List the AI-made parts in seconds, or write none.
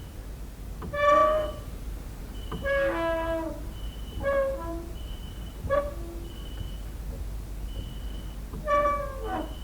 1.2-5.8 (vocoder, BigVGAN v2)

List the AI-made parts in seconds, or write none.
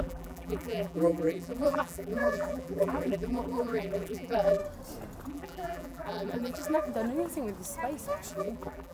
0.0-4.6 (vocoder, BigVGAN v2); 5.3-6.9; 8.3-8.9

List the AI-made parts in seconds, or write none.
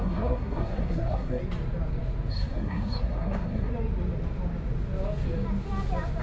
0.0-1.4 (codec, SNAC); 2.3-3.7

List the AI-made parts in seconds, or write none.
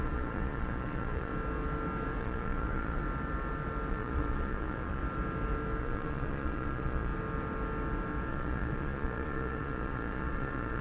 0.0-1.3 (vocoder, Vocos); 2.2-3.0; 3.9-5.0; 5.8-7.1; 8.3-10.8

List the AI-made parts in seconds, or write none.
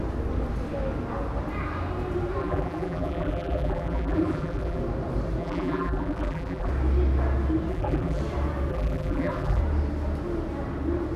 2.4-4.8 (vocoder, BigVGAN v2); 5.4-6.7; 7.7-8.2; 8.7-9.6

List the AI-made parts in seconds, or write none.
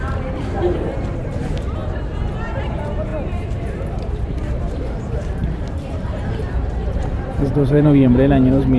0.0-1.8 (vocoder, BigVGAN v2); 2.4-8.8